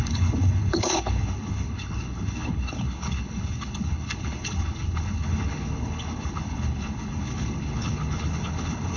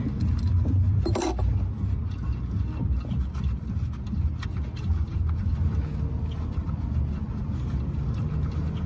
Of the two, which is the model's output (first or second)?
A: first